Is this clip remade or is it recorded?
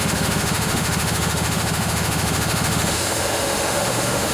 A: remade